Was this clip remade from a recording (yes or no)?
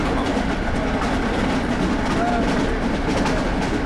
no